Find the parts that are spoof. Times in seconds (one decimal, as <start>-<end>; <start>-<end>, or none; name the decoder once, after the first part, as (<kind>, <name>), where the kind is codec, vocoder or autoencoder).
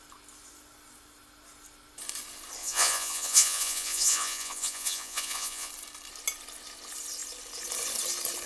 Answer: 2.6-5.7 (vocoder, Vocos)